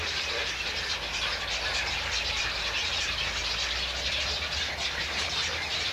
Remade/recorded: recorded